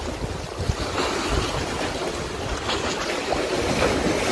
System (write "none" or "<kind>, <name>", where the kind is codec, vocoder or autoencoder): none